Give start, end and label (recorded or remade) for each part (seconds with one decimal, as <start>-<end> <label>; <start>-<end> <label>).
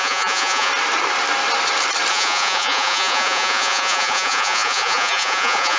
0.0-0.7 remade; 0.7-2.1 recorded; 2.1-5.8 remade